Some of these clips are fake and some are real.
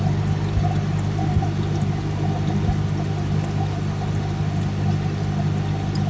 real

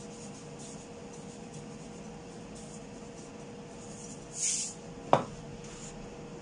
real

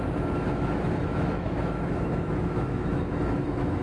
fake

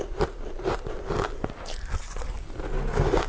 real